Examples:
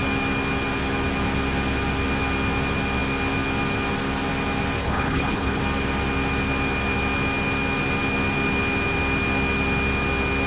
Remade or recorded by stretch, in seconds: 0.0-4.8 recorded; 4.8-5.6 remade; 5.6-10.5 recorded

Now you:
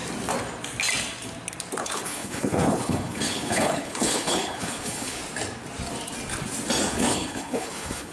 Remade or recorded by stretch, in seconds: 0.0-1.8 recorded; 1.8-5.2 remade; 5.2-6.9 recorded; 6.9-8.1 remade

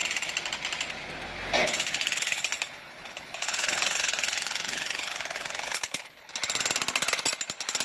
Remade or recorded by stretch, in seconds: 0.0-1.6 recorded; 1.6-6.3 remade; 6.3-7.8 recorded

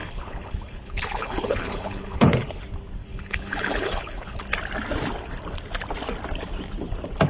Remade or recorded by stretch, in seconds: 0.0-2.6 remade; 2.6-3.0 recorded; 3.0-4.4 remade; 4.4-7.3 recorded

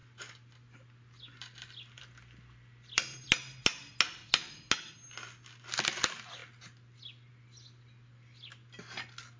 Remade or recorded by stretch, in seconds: 0.0-9.4 recorded

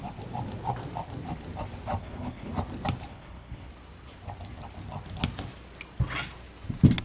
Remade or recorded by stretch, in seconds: 0.0-2.0 recorded; 2.0-2.5 remade; 2.5-3.1 recorded; 3.1-3.7 remade; 3.7-7.0 recorded

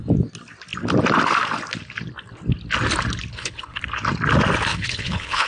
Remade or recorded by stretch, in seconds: 0.0-3.3 recorded; 3.3-3.8 remade; 3.8-4.7 recorded; 4.7-5.5 remade

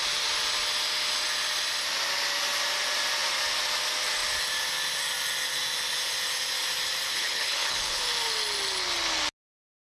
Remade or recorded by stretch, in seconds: 0.0-7.1 recorded; 7.1-8.0 remade; 8.0-9.8 recorded